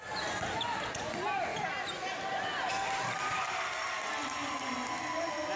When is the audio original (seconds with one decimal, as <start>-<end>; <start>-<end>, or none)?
0.0-5.6